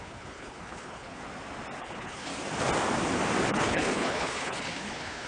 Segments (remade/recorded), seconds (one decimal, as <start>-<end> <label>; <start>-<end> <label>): 0.0-1.2 remade; 1.2-1.8 recorded; 1.8-2.3 remade; 2.3-3.5 recorded; 3.5-5.3 remade